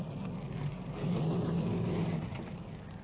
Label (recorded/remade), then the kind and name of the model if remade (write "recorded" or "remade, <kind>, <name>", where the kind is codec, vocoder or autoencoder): recorded